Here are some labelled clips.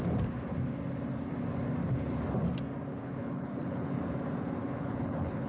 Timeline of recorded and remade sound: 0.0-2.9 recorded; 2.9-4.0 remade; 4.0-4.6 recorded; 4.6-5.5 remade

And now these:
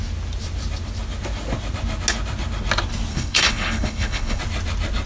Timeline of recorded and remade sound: 0.0-3.1 recorded; 3.1-4.4 remade; 4.4-5.1 recorded

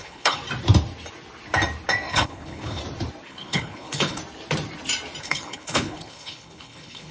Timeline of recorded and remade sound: 0.0-0.4 remade; 0.4-2.1 recorded; 2.1-2.8 remade; 2.8-3.3 recorded; 3.3-4.2 remade; 4.2-5.2 recorded; 5.2-7.1 remade

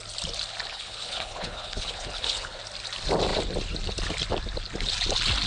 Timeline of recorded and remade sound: 0.0-0.7 recorded; 0.7-2.6 remade; 2.6-5.5 recorded